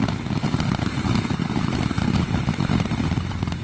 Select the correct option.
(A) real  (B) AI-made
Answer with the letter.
B